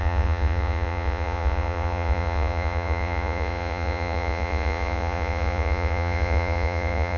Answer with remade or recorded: remade